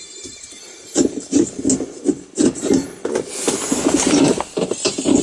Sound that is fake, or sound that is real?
real